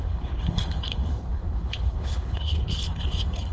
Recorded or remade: remade